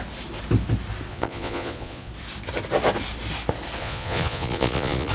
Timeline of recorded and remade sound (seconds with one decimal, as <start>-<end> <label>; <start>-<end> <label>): 0.0-1.1 recorded; 1.1-2.1 remade; 2.1-3.8 recorded; 3.8-5.1 remade